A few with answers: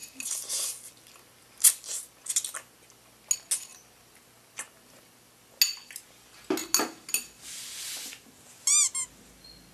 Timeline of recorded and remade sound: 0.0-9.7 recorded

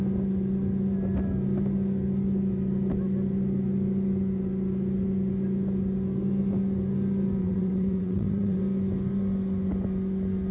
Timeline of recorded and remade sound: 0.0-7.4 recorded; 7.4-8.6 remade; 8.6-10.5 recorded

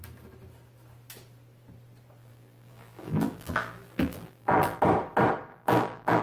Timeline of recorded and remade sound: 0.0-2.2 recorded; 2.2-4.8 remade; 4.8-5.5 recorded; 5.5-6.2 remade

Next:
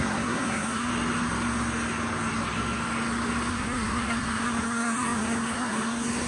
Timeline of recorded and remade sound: 0.0-0.9 remade; 0.9-3.5 recorded; 3.5-6.3 remade